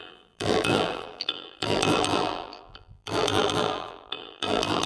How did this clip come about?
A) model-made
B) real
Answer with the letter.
A